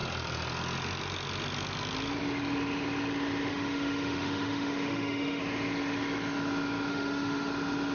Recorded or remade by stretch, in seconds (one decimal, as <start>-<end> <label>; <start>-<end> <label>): 0.0-3.5 recorded; 3.5-5.4 remade; 5.4-6.9 recorded; 6.9-7.5 remade; 7.5-7.9 recorded

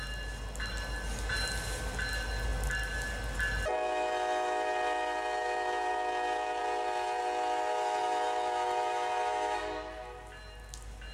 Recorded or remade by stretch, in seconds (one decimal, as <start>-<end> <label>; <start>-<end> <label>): 0.0-11.1 recorded

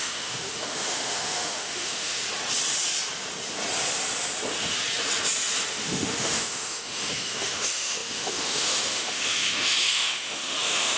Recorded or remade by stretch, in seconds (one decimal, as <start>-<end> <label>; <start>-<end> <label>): 0.0-2.2 remade; 2.2-5.7 recorded; 5.7-11.0 remade

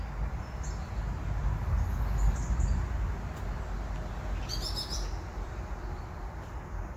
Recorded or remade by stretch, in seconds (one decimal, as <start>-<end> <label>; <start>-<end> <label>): 0.0-5.3 recorded; 5.3-6.6 remade; 6.6-7.0 recorded

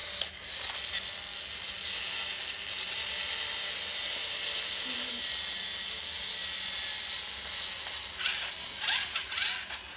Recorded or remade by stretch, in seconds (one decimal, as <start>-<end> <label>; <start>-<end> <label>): 0.0-10.0 recorded

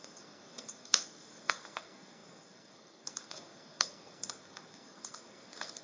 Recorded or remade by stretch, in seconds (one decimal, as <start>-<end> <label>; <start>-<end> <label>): 0.0-5.8 remade